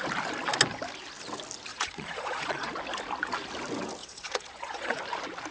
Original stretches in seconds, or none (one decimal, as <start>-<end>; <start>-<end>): 0.0-1.7; 2.7-4.0; 5.0-5.5